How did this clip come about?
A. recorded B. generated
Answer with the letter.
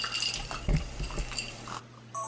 B